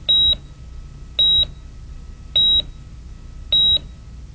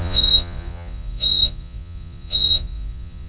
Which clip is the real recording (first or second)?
first